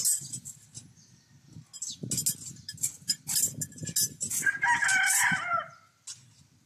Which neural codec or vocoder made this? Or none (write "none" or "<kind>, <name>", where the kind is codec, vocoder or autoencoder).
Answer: none